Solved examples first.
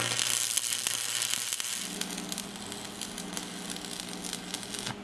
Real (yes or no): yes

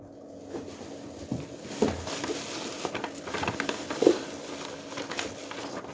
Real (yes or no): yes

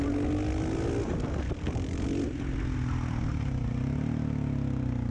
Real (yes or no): yes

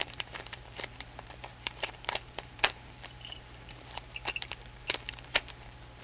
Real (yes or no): no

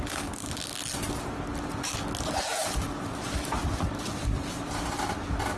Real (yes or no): yes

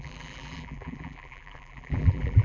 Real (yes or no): no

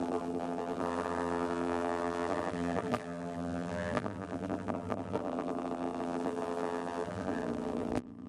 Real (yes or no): no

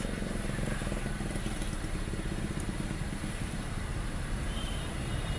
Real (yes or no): no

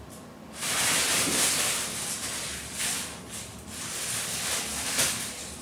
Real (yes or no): yes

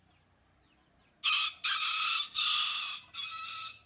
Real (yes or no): yes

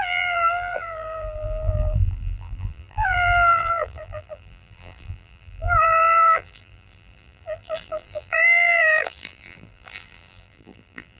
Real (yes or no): no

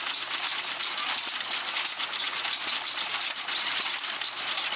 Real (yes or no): yes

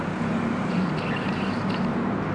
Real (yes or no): no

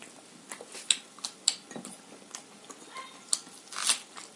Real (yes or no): yes